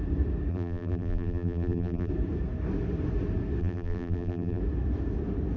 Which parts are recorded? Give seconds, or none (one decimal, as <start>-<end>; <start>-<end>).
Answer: 0.0-0.5; 2.1-3.6; 4.6-5.6